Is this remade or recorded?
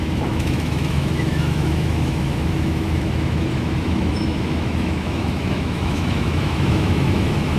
remade